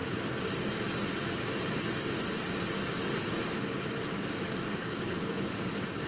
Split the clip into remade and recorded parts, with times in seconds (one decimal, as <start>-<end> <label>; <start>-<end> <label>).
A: 0.0-3.1 recorded; 3.1-5.4 remade; 5.4-6.1 recorded

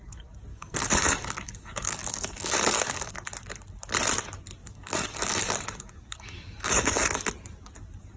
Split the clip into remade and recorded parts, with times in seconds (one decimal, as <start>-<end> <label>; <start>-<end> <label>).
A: 0.0-0.5 recorded; 0.5-3.1 remade; 3.1-4.6 recorded; 4.6-7.3 remade; 7.3-8.2 recorded

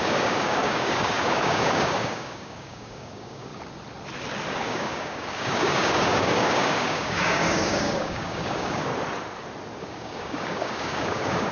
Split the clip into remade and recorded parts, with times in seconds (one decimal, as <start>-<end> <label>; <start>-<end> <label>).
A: 0.0-3.5 remade; 3.5-4.5 recorded; 4.5-8.9 remade; 8.9-9.8 recorded; 9.8-11.5 remade